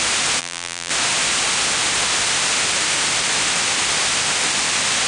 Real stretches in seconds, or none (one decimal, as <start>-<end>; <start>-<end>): 0.0-0.4; 0.9-5.1